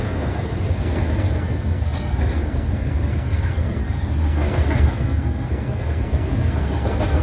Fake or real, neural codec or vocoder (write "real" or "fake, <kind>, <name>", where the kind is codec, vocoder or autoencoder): fake, codec, SNAC